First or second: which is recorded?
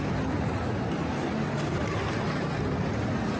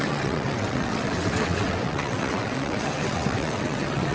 first